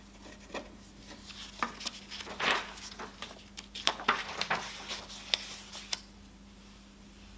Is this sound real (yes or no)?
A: yes